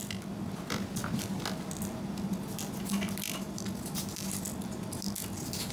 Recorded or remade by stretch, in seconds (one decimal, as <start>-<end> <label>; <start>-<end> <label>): 0.0-5.7 recorded